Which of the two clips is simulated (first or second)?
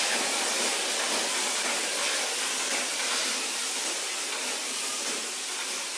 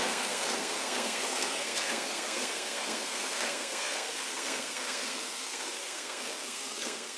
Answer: second